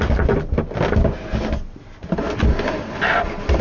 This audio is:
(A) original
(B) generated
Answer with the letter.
A